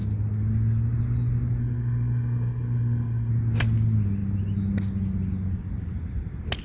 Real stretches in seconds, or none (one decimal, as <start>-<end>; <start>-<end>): 0.0-1.6; 3.3-6.6